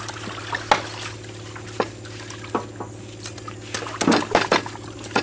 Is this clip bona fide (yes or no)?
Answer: yes